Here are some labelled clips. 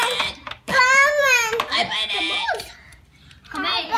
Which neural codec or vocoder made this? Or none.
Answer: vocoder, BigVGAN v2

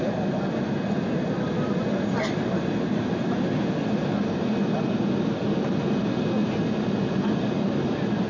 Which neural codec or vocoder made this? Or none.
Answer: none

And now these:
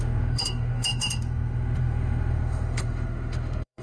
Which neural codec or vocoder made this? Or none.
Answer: autoencoder, DAC-VAE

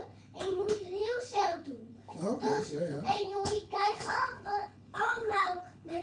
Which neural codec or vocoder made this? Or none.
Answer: codec, HILCodec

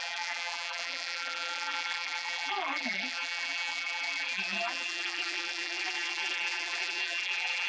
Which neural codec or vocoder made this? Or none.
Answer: vocoder, BigVGAN v2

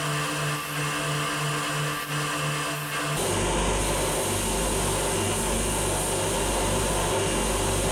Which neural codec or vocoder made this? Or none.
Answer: none